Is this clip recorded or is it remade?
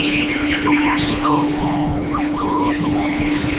remade